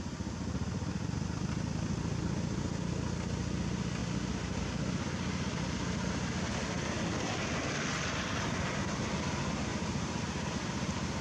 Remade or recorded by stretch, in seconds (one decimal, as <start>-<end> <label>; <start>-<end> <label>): 0.0-4.0 recorded; 4.0-4.6 remade; 4.6-9.7 recorded; 9.7-11.2 remade